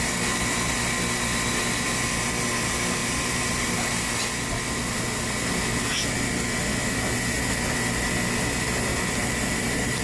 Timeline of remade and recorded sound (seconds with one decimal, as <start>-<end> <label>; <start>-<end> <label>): 0.0-3.0 recorded; 3.0-4.1 remade; 4.1-8.9 recorded; 8.9-10.0 remade

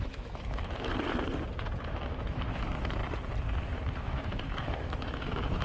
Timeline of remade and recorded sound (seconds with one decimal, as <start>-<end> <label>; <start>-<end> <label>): 0.0-0.9 remade; 0.9-1.8 recorded; 1.8-3.0 remade; 3.0-4.0 recorded; 4.0-5.6 remade

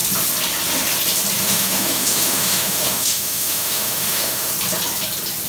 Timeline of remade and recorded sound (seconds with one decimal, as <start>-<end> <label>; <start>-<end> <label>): 0.0-1.4 recorded; 1.4-4.5 remade; 4.5-5.5 recorded

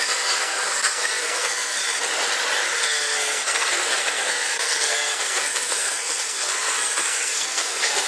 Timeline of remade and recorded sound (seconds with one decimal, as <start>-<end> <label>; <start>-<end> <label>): 0.0-1.8 remade; 1.8-2.8 recorded; 2.8-8.1 remade

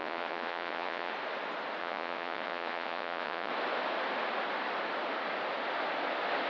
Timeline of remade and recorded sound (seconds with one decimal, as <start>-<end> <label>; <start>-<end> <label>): 0.0-1.1 remade; 1.1-1.8 recorded; 1.8-3.5 remade; 3.5-6.5 recorded

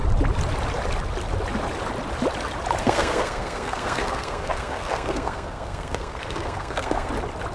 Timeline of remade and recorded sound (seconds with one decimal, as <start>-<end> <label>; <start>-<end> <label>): 0.0-2.8 recorded; 2.8-7.1 remade; 7.1-7.5 recorded